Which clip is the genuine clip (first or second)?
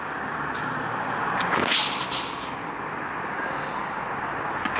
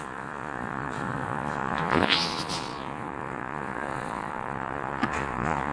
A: first